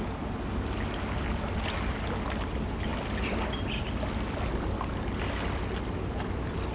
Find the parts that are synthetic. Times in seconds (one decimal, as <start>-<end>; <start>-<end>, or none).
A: none

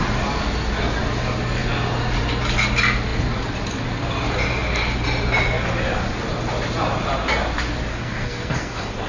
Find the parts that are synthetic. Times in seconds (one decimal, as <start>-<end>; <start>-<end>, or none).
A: 7.9-9.1

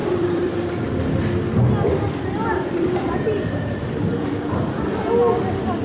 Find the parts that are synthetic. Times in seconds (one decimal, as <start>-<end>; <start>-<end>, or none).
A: 0.0-0.9; 2.8-4.7

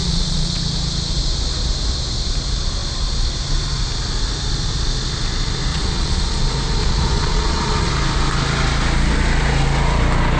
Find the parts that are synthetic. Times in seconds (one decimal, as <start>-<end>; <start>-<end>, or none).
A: 0.0-0.6; 5.7-6.3; 6.8-7.9

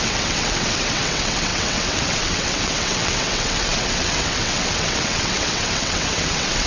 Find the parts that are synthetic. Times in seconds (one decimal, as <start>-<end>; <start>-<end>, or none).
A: 0.0-6.7

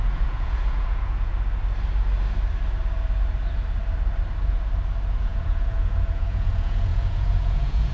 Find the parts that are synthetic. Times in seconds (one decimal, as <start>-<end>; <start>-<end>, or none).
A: 0.0-1.3; 5.2-7.9

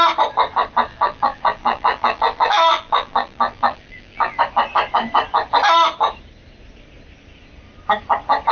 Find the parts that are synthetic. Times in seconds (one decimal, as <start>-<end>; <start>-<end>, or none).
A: 0.9-4.4